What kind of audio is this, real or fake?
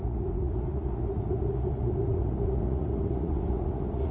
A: fake